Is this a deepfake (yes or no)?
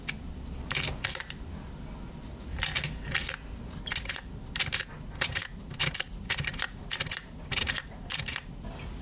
no